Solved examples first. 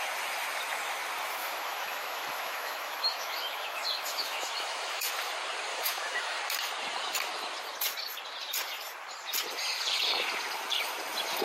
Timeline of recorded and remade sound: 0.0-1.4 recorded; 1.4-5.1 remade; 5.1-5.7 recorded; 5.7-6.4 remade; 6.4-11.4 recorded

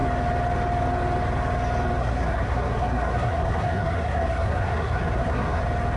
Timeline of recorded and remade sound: 0.0-2.0 recorded; 2.0-5.6 remade; 5.6-6.0 recorded

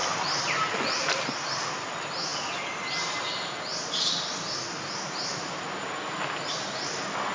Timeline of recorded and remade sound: 0.0-1.1 remade; 1.1-7.3 recorded

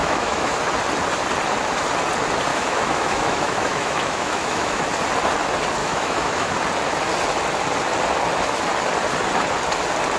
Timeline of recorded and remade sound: 0.0-0.6 remade; 0.6-2.5 recorded; 2.5-4.8 remade; 4.8-5.8 recorded; 5.8-6.5 remade; 6.5-10.2 recorded

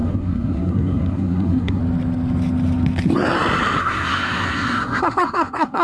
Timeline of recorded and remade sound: 0.0-1.8 remade; 1.8-3.8 recorded; 3.8-5.8 remade

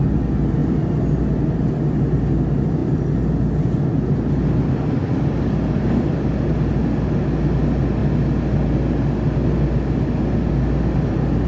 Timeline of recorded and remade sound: 0.0-11.5 recorded